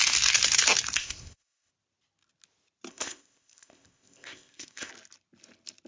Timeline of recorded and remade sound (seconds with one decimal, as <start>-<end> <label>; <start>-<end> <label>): 0.0-1.0 recorded; 1.0-1.7 remade; 1.7-2.9 recorded; 2.9-4.9 remade; 4.9-5.9 recorded